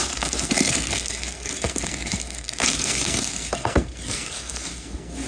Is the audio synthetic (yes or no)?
yes